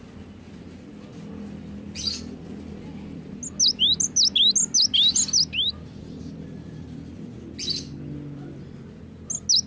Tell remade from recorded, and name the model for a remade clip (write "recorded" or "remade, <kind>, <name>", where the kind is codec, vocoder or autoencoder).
recorded